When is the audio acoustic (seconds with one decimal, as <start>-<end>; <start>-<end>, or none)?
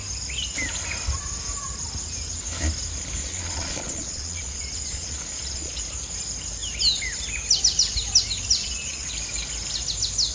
0.0-3.2; 5.8-8.6; 9.1-10.3